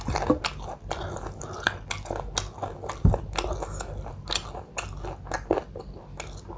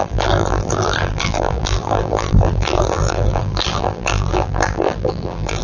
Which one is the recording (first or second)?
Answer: first